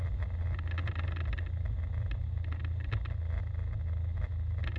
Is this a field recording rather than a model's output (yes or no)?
yes